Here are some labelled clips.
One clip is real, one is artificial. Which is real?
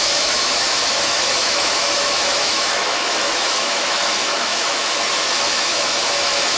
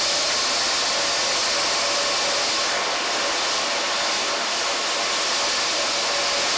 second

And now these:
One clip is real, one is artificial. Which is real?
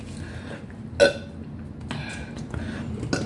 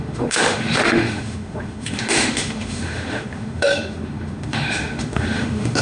first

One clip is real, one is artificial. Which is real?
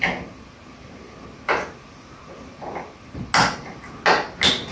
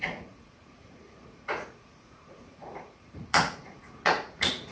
first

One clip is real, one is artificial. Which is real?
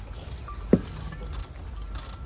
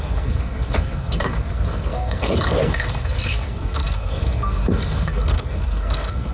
first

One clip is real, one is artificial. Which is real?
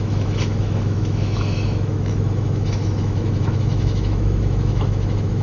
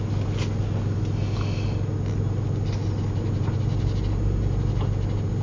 second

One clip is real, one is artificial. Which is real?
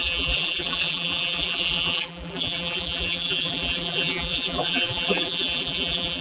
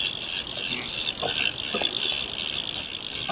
second